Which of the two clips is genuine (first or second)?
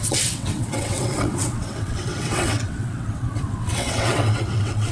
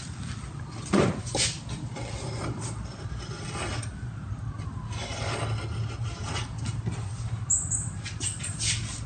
second